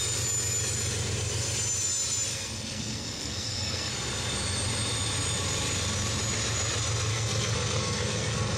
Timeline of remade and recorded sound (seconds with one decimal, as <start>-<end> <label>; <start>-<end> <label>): 0.0-2.3 recorded; 2.3-3.9 remade; 3.9-7.1 recorded; 7.1-8.6 remade